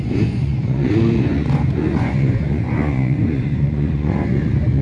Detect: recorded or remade remade